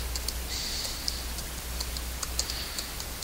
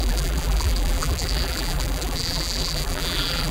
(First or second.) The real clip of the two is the first